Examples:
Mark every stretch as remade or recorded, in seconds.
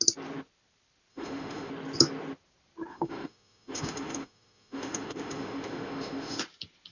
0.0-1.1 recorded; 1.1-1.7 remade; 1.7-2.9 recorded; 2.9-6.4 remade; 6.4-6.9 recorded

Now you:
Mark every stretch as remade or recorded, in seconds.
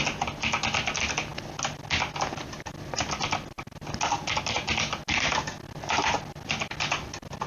0.0-7.5 recorded